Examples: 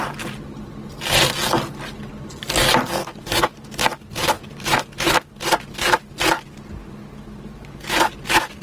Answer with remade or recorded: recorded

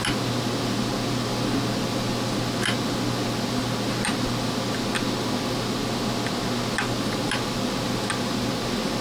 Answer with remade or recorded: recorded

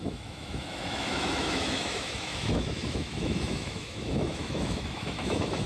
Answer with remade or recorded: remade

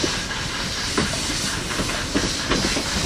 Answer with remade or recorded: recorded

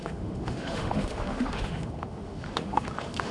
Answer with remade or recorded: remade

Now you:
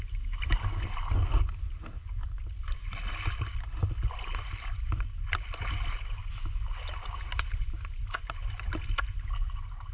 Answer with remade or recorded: recorded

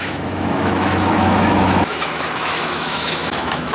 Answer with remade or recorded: remade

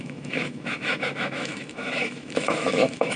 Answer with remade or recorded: remade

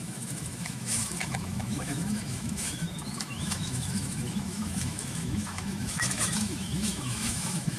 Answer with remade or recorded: remade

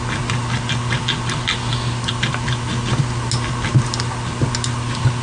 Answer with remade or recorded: recorded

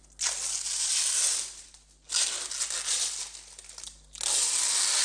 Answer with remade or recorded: recorded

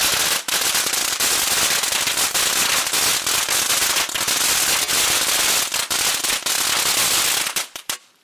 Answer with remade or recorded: recorded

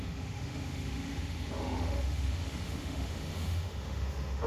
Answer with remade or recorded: remade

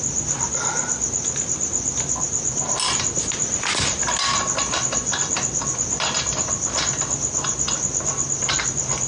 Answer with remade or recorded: recorded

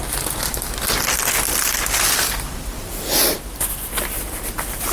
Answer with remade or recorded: recorded